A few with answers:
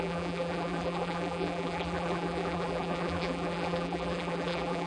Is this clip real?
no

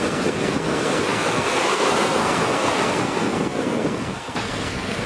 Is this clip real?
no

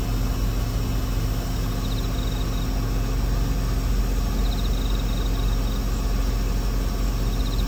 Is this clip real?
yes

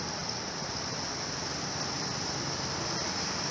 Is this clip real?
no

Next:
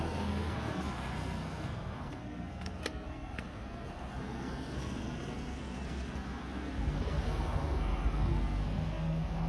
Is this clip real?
no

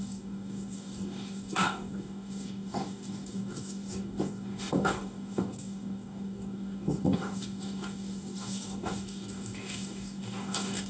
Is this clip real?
no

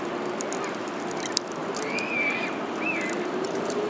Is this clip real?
yes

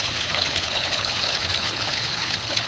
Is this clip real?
no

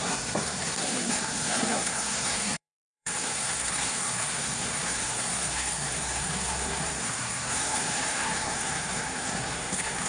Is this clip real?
no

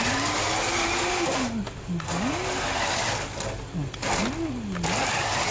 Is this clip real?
yes